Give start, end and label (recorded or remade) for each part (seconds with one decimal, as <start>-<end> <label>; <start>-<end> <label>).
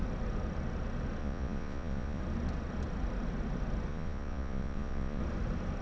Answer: 0.0-1.2 recorded; 1.2-2.2 remade; 2.2-3.9 recorded; 3.9-5.2 remade; 5.2-5.8 recorded